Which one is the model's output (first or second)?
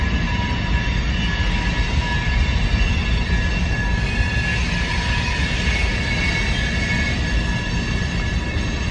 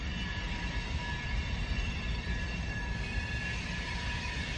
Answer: second